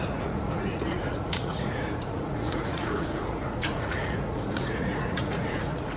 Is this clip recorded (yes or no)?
no